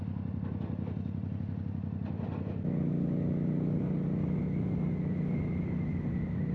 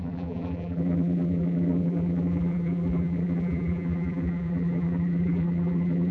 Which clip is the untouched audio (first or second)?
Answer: first